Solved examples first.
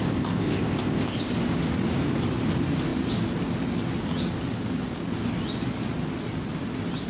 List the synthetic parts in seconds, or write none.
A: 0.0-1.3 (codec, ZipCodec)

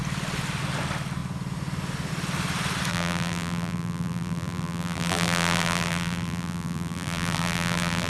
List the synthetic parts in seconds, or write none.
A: 2.9-8.1 (vocoder, BigVGAN v2)

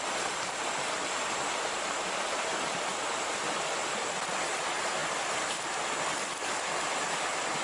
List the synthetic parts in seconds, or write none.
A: none

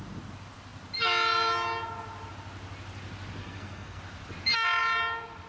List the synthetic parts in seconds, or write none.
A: 3.4-4.0 (codec, SNAC)

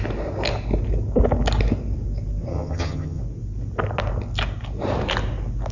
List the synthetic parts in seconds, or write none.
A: 2.5-3.2 (vocoder, HiFi-GAN)

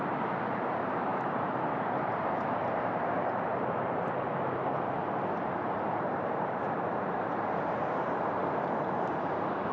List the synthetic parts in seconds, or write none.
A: 0.0-5.0 (vocoder, BigVGAN v2); 5.7-9.7